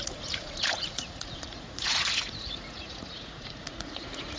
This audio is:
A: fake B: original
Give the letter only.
A